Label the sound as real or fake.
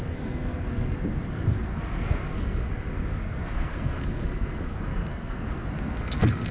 fake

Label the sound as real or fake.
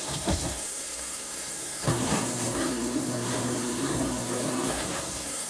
fake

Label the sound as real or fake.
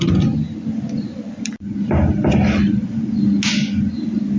real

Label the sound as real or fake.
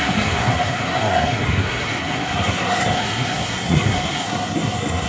fake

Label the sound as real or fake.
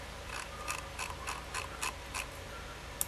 real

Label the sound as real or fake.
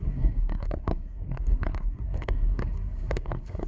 fake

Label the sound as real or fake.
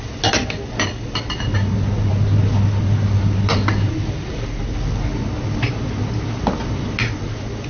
real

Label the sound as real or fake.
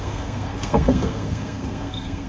fake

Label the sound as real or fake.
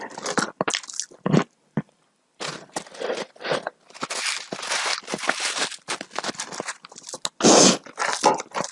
real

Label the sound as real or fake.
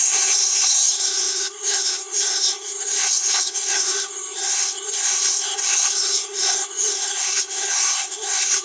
fake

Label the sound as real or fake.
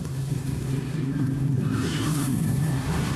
fake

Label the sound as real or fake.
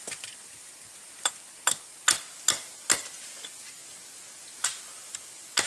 real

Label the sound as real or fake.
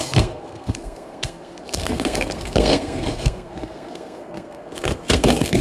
fake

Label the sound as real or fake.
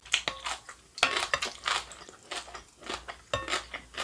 real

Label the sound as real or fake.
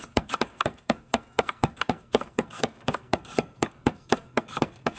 fake